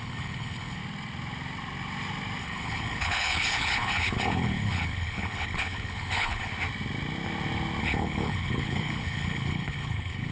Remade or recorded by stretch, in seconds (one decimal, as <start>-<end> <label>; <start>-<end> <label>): 0.0-0.8 remade; 0.8-2.4 recorded; 2.4-6.5 remade; 6.5-7.8 recorded; 7.8-10.3 remade